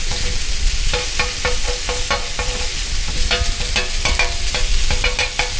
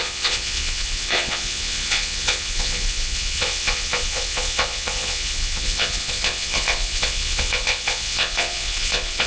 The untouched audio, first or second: first